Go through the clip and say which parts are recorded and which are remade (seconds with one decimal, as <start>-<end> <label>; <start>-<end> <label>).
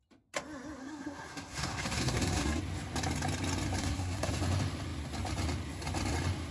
0.0-0.8 recorded; 0.8-2.6 remade; 2.6-3.8 recorded; 3.8-4.4 remade; 4.4-6.5 recorded